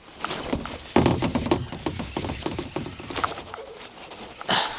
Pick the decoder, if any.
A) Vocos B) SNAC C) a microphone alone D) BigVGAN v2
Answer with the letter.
C